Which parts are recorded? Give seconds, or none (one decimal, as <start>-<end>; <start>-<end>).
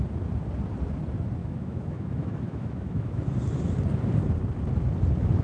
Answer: 0.0-1.4; 3.2-5.4